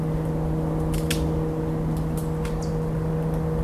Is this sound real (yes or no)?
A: yes